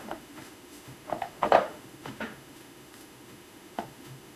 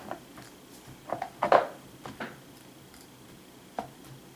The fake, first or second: first